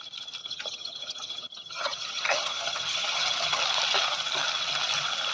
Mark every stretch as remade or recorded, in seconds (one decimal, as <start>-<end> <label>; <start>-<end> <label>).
0.0-0.4 recorded; 0.4-3.6 remade; 3.6-5.3 recorded